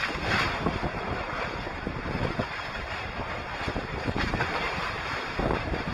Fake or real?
fake